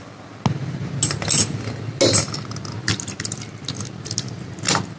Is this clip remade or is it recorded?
recorded